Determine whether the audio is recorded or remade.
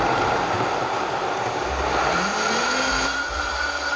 remade